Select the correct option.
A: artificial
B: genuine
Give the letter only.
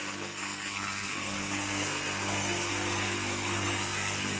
A